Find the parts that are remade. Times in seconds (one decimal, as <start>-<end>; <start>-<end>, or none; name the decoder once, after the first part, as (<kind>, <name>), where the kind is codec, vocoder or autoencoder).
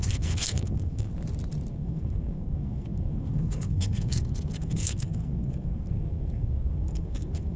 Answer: 0.0-1.1 (codec, SNAC); 1.7-7.6